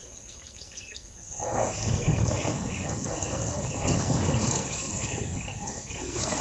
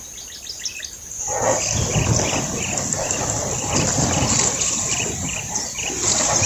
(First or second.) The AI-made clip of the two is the first